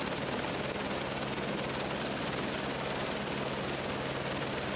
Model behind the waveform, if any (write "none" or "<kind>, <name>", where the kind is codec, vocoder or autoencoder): none